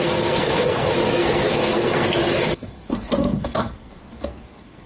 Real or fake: fake